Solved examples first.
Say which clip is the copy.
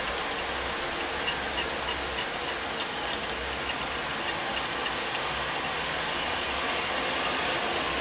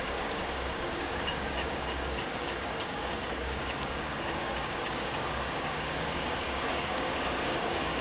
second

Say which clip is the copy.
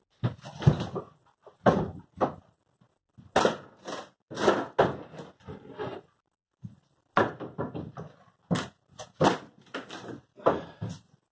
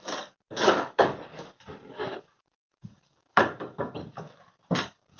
second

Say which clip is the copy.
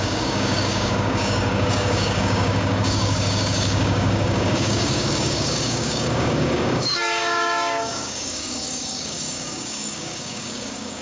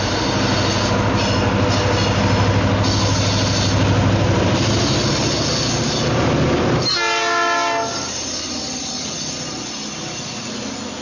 first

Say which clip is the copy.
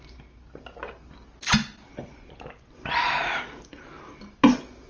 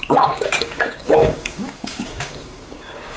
second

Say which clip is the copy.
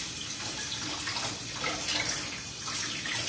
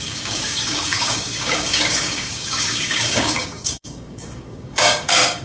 second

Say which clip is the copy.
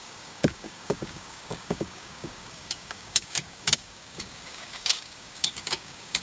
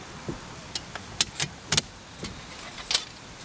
first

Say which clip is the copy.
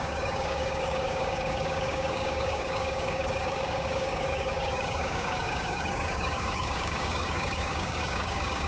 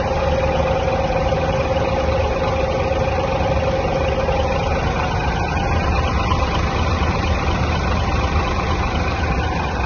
first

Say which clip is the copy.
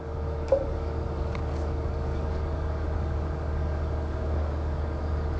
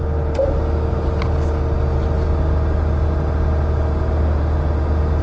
first